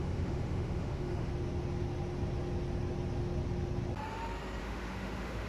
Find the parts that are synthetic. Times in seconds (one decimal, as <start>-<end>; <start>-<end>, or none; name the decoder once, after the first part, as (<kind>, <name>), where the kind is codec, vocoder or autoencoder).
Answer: 0.0-1.3 (autoencoder, DAC-VAE); 4.6-5.5